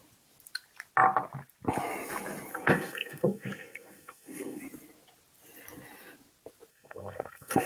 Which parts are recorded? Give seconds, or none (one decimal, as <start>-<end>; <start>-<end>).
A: 0.0-2.5; 4.6-6.7

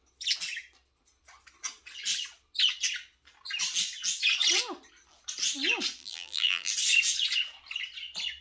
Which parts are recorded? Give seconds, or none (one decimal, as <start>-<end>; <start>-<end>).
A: 0.0-6.0; 6.7-8.4

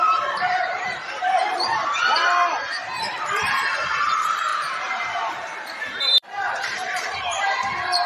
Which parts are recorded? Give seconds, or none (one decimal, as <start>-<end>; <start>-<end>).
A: 2.2-3.0

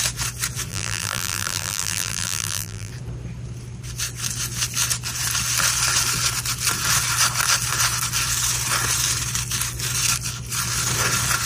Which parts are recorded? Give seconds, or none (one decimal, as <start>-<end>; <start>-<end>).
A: 0.0-0.7; 2.9-11.4

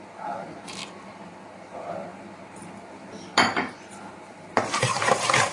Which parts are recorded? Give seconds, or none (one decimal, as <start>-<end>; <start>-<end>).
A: 0.8-1.6

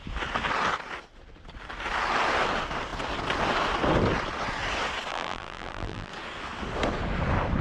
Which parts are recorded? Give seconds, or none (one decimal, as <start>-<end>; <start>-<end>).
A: 0.0-5.1; 6.1-7.6

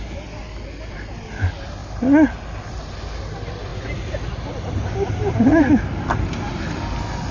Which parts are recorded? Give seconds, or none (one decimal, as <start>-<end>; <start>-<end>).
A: 0.0-7.3

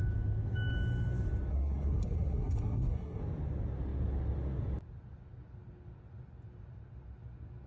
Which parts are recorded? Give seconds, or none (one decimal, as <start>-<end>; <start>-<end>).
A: 0.0-1.5; 3.2-7.7